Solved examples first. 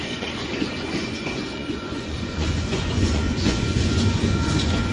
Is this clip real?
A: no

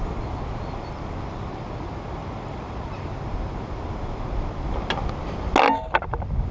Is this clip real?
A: yes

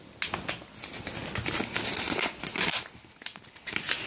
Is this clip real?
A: yes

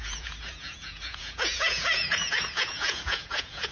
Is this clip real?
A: no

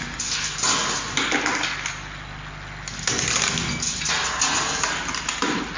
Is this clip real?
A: yes